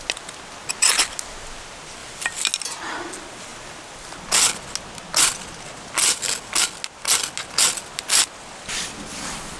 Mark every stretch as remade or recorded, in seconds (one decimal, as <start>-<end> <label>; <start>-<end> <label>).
0.0-2.0 recorded; 2.0-2.5 remade; 2.5-9.6 recorded